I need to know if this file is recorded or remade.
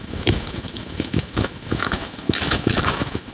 remade